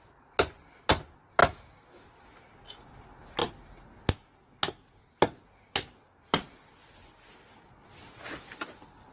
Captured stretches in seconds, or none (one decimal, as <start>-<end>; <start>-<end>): 0.0-1.4; 2.0-9.1